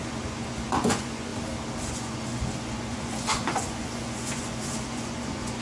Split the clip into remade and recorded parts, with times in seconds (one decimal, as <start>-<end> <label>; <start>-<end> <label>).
0.0-1.3 remade; 1.3-1.9 recorded; 1.9-5.6 remade